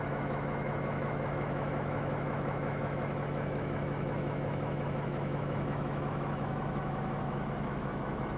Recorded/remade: remade